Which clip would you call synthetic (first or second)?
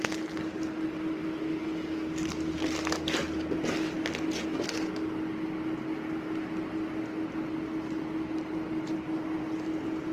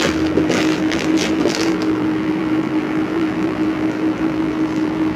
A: second